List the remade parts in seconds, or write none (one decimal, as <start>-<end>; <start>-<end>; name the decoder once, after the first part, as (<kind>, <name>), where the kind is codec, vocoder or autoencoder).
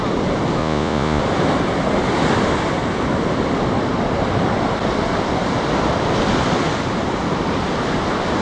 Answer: 0.6-1.2 (vocoder, Vocos)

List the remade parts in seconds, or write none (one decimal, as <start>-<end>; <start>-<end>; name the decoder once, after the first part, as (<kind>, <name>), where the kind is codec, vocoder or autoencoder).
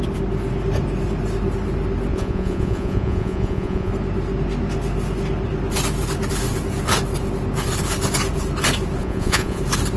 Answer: 2.1-3.9 (vocoder, Vocos); 9.0-9.6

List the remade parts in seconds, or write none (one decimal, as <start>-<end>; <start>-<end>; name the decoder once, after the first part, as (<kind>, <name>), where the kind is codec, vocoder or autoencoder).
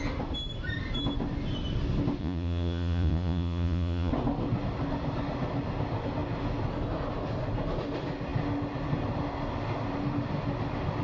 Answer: 2.2-4.1 (vocoder, Vocos)